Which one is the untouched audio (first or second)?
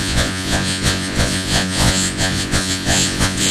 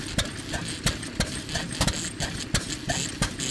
second